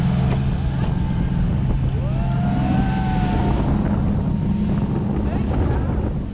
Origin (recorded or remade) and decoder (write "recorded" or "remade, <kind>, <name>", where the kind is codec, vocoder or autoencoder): recorded